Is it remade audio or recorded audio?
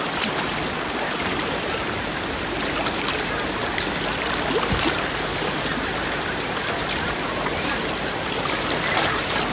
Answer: recorded